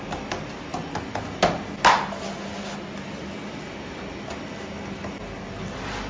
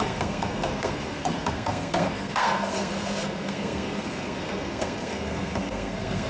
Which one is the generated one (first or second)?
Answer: second